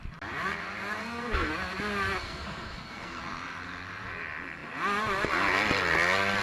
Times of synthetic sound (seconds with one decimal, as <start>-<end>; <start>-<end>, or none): 1.0-1.5; 2.2-3.2